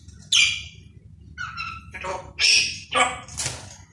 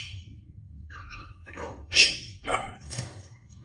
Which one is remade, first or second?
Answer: second